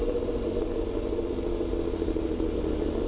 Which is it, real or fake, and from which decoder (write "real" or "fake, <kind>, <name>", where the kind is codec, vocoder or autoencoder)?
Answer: real